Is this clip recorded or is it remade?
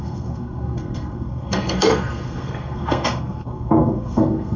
remade